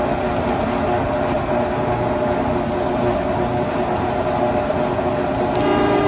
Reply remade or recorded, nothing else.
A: recorded